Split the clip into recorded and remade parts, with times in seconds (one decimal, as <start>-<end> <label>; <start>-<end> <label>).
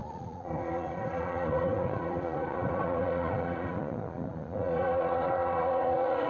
0.0-6.3 remade